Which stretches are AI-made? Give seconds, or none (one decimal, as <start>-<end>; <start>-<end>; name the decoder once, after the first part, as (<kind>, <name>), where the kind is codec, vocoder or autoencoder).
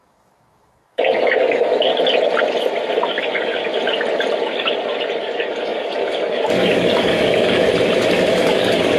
0.0-1.9 (codec, DAC); 3.2-3.7; 5.2-7.7; 8.3-9.0